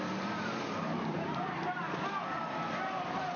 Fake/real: fake